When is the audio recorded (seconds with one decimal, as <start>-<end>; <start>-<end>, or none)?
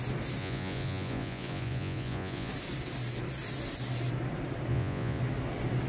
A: 0.0-0.4; 2.5-4.7; 5.2-5.9